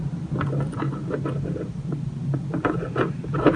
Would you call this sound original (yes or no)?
yes